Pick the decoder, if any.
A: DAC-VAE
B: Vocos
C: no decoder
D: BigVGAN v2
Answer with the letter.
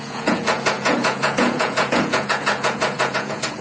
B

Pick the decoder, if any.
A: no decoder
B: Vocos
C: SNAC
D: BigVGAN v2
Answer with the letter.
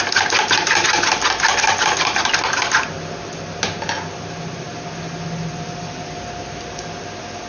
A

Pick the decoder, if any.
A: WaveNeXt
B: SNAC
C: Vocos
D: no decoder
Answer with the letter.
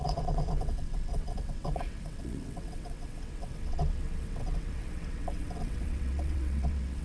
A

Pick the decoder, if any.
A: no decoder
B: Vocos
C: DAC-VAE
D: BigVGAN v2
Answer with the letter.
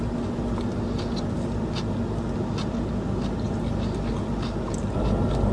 A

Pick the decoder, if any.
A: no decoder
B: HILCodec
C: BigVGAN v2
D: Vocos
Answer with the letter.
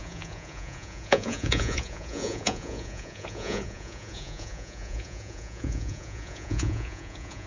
D